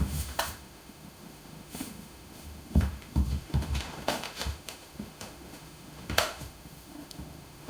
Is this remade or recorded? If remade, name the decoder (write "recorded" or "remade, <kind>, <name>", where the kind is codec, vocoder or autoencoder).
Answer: remade, autoencoder, DAC-VAE